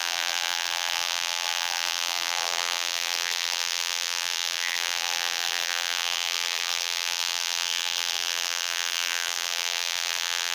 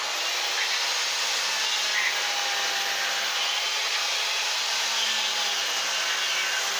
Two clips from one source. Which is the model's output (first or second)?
first